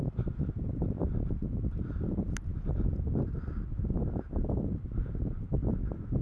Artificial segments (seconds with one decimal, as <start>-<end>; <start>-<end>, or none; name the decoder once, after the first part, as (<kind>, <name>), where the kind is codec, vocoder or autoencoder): none